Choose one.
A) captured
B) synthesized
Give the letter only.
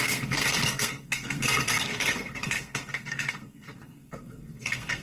B